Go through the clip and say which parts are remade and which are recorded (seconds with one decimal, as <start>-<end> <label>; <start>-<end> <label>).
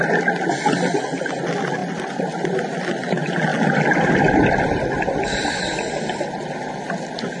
0.0-1.8 recorded; 1.8-2.8 remade; 2.8-7.4 recorded